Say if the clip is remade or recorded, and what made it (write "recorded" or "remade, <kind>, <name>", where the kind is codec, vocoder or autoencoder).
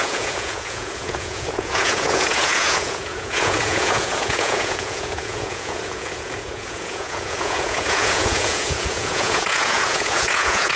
remade, vocoder, Vocos